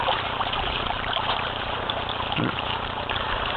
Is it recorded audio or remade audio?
remade